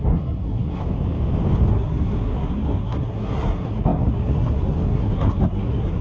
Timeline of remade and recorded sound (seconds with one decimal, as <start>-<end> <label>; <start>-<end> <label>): 0.0-0.8 remade; 0.8-1.7 recorded; 1.7-6.0 remade